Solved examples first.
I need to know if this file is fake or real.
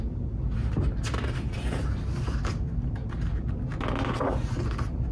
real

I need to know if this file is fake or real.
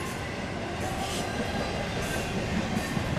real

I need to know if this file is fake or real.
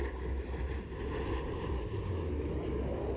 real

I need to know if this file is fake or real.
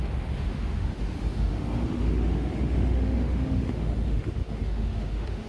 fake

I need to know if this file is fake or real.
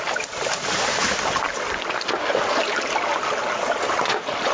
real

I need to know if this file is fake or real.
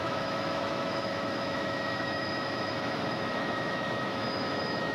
fake